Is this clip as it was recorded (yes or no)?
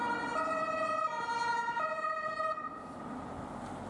yes